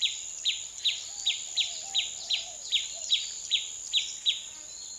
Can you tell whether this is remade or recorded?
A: remade